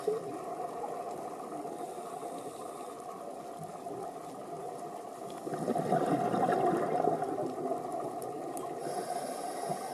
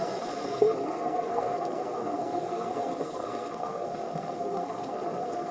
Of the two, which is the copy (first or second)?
second